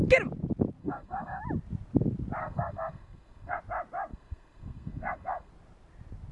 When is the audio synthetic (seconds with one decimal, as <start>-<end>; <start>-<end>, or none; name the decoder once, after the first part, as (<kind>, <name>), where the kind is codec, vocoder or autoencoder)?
0.8-1.4 (codec, SNAC); 2.4-3.6; 4.1-5.5